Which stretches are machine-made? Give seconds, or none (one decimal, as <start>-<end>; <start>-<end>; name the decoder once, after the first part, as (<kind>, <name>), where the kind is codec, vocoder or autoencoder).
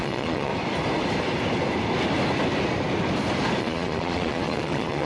0.0-0.5 (vocoder, Vocos); 3.6-5.1